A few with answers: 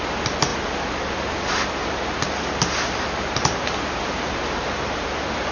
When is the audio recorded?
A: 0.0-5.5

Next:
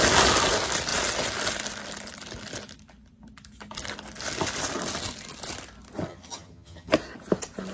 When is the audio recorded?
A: 0.0-6.1; 6.9-7.7

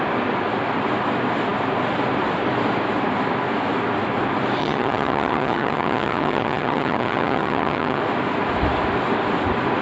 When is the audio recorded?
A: 0.0-4.6; 8.0-9.8

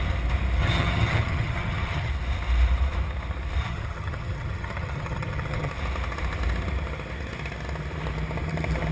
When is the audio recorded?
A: 0.0-0.6; 2.1-3.6; 5.7-8.9

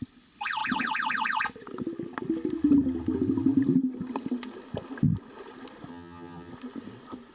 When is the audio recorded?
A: 0.0-5.9; 6.5-7.3

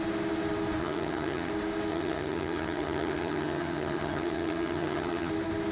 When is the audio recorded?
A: 0.0-0.8; 1.5-1.9; 5.3-5.7

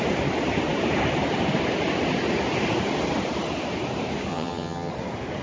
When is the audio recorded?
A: 0.0-4.3; 4.9-5.4

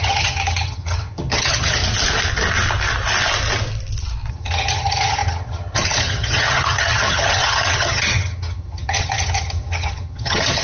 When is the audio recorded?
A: 1.8-4.3